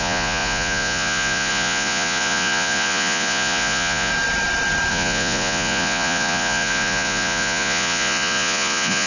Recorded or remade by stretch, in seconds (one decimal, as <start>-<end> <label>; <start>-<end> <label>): 0.0-4.1 remade; 4.1-4.9 recorded; 4.9-9.1 remade